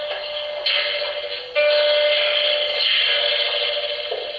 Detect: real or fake real